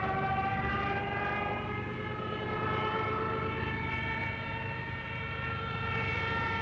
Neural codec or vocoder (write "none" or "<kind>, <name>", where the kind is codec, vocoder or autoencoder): vocoder, BigVGAN v2